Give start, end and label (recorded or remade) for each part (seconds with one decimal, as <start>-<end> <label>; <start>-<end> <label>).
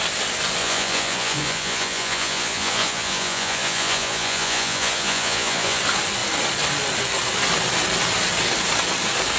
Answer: 0.0-0.6 recorded; 0.6-5.8 remade; 5.8-9.4 recorded